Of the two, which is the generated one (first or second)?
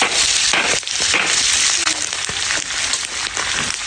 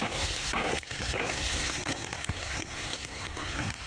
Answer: second